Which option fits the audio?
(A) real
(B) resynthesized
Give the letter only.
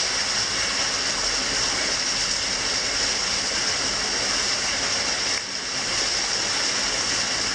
A